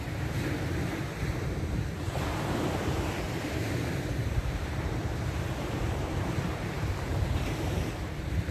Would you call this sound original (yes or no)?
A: no